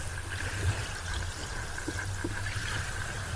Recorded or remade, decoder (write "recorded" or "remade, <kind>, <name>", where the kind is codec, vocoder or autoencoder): recorded